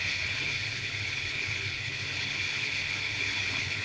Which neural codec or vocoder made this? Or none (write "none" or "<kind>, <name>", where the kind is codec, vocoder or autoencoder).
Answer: codec, HILCodec